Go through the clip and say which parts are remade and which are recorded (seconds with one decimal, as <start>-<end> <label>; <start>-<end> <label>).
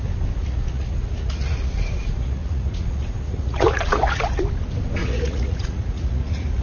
0.0-0.4 recorded; 0.4-4.4 remade; 4.4-5.0 recorded; 5.0-6.6 remade